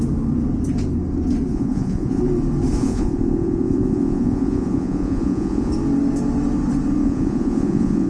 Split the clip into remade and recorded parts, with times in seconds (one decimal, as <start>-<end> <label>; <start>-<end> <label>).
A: 0.0-1.5 recorded; 1.5-2.2 remade; 2.2-2.8 recorded; 2.8-5.7 remade; 5.7-7.0 recorded; 7.0-8.1 remade